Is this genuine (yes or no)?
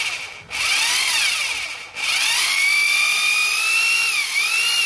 no